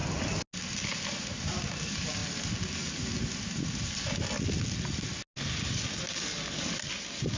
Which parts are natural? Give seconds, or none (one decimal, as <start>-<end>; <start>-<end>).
0.0-7.4